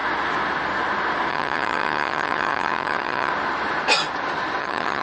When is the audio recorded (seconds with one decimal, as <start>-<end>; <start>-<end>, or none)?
0.0-1.3; 3.3-4.6